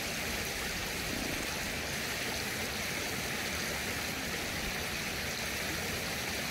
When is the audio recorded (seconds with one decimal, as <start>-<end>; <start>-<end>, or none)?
0.0-6.5